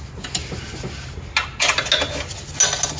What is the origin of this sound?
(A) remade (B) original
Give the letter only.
B